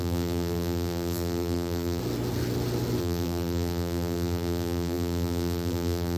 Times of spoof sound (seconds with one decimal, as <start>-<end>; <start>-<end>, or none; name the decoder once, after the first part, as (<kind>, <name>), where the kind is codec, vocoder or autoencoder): 0.0-2.0 (vocoder, BigVGAN v2); 3.0-6.2